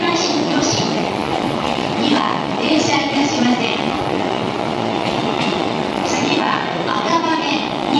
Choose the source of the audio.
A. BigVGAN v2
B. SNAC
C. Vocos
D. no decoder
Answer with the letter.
C